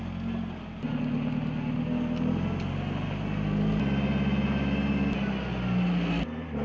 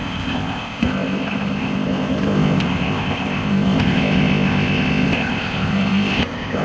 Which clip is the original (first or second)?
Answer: first